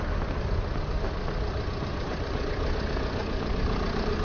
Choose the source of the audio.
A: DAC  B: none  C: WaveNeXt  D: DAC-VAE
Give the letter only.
B